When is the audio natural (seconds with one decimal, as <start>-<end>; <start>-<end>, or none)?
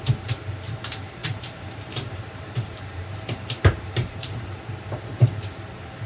0.0-1.2; 4.6-6.1